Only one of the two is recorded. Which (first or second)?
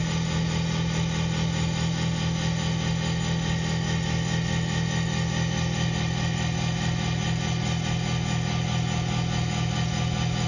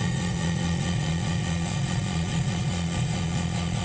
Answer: first